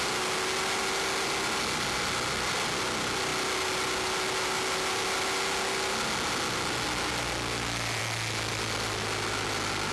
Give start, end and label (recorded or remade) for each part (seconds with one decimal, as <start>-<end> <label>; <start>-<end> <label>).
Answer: 0.0-9.9 recorded